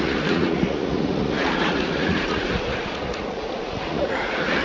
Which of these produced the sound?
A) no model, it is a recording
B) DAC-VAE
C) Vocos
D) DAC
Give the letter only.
C